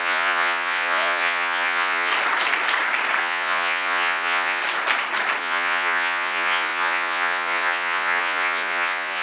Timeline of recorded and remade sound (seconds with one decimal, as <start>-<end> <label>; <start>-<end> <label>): 0.0-2.1 remade; 2.1-3.2 recorded; 3.2-4.6 remade; 4.6-5.4 recorded; 5.4-9.2 remade